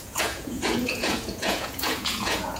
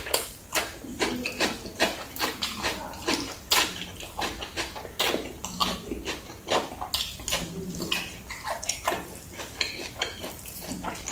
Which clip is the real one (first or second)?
second